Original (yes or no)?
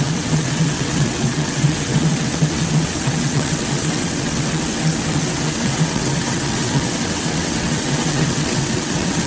no